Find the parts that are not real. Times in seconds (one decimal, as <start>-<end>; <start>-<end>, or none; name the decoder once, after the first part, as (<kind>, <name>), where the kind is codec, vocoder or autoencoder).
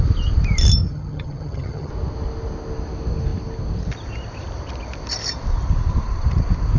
0.8-1.9 (vocoder, HiFi-GAN)